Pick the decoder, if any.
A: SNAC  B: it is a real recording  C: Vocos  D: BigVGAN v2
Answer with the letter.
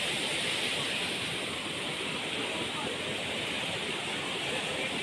B